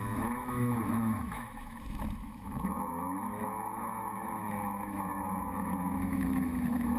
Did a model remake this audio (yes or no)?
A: yes